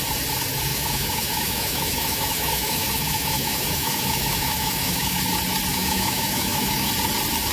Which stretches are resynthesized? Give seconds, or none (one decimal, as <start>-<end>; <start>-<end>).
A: 0.7-5.2; 5.7-6.9